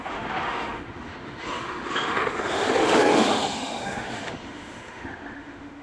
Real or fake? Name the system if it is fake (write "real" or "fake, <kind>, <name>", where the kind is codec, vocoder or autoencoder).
fake, autoencoder, DAC-VAE